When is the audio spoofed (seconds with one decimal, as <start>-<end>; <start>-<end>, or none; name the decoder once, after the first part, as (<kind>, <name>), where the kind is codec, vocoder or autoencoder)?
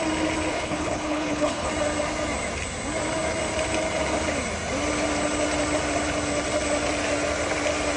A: 0.5-1.7 (codec, HILCodec)